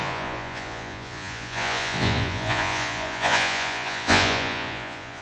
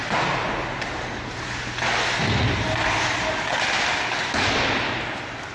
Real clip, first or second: second